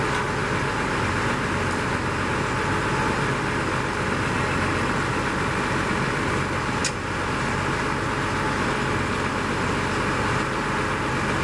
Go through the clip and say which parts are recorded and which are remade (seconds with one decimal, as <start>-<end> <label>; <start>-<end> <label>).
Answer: 0.0-11.4 recorded